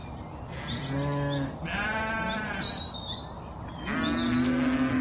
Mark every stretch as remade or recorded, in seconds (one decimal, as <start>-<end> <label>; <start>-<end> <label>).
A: 0.0-0.6 remade; 0.6-5.0 recorded